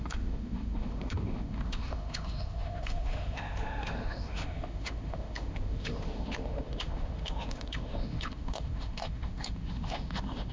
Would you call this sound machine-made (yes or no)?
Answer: yes